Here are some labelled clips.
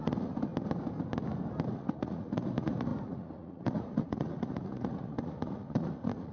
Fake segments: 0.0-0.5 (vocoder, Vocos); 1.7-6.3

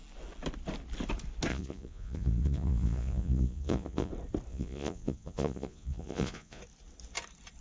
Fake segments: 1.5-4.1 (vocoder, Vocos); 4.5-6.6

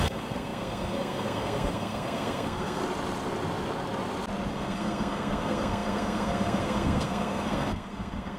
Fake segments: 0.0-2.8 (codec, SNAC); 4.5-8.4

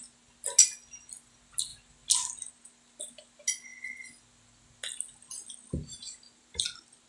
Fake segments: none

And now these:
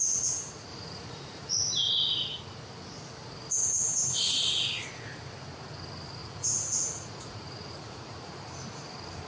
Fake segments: 0.7-1.5 (vocoder, Vocos); 6.2-8.4

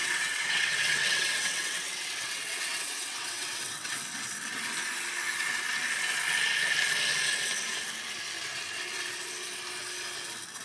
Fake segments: 0.0-4.0 (vocoder, WaveNeXt)